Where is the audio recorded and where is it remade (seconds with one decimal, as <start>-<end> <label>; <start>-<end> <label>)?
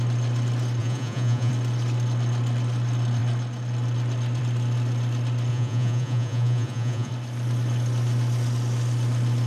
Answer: 0.0-0.8 recorded; 0.8-1.5 remade; 1.5-5.5 recorded; 5.5-7.1 remade; 7.1-9.5 recorded